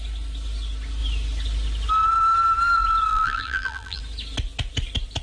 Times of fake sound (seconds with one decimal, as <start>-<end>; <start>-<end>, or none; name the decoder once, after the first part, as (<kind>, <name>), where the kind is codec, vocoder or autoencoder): 3.1-4.0 (vocoder, BigVGAN v2)